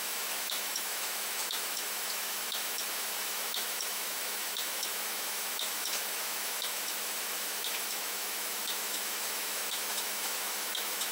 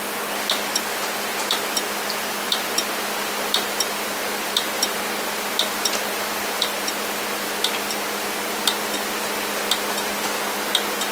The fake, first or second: first